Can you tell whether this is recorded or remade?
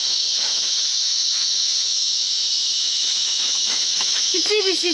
remade